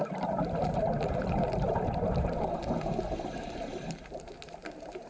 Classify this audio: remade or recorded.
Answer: remade